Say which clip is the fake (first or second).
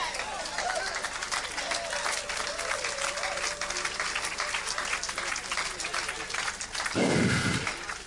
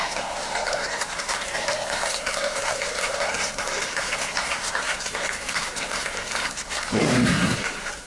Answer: second